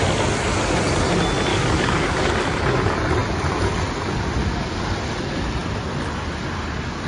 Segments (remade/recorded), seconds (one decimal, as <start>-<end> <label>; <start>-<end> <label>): 0.0-1.5 recorded; 1.5-2.4 remade; 2.4-7.1 recorded